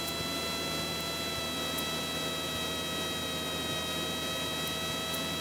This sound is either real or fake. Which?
real